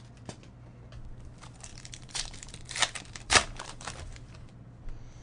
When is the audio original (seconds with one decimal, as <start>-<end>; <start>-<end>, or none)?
0.0-1.7; 4.8-5.2